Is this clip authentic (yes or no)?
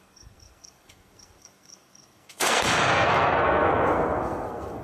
no